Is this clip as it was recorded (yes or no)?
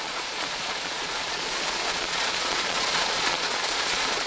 no